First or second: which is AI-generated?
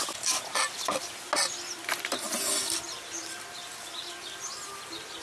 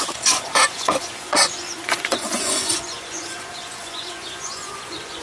second